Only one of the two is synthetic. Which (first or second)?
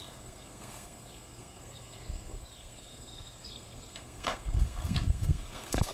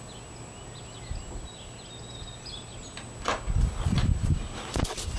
first